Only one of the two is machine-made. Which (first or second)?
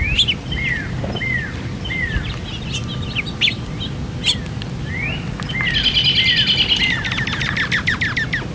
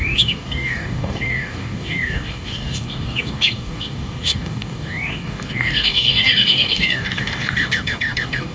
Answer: second